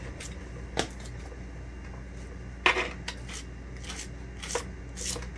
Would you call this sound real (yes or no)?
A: yes